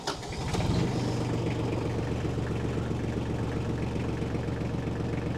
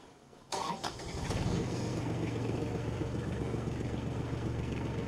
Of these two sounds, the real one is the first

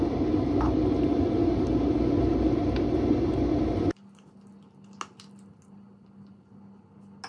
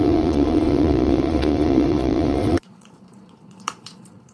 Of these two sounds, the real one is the first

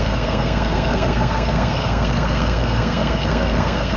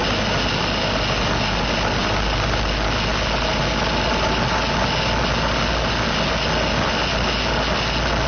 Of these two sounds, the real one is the second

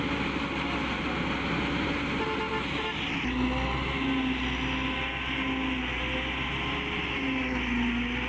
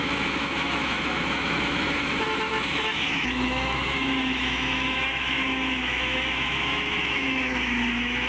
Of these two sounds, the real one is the first